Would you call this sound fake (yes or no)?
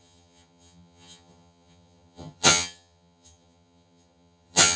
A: yes